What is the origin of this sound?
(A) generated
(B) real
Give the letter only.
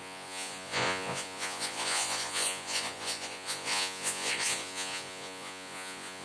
A